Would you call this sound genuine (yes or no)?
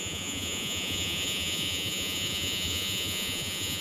no